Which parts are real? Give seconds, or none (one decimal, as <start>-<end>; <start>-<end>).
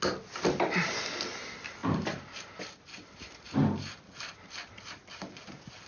0.0-5.9